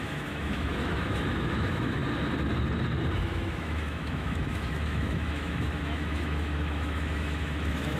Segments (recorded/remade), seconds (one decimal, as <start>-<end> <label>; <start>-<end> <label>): 0.0-2.0 remade; 2.0-3.2 recorded; 3.2-8.0 remade

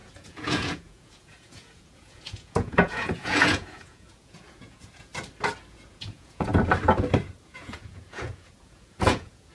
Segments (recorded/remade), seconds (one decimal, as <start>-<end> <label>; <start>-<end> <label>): 0.0-5.1 remade; 5.1-5.7 recorded; 5.7-6.5 remade; 6.5-7.4 recorded; 7.4-9.5 remade

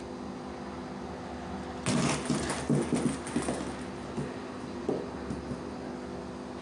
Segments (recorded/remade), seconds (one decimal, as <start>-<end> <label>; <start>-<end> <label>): 0.0-6.6 recorded